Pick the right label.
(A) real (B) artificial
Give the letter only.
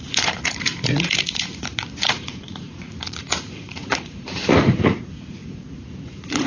B